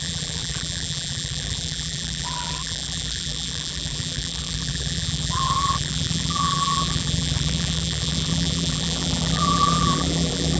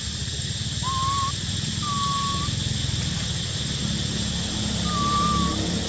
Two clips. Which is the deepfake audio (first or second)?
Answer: first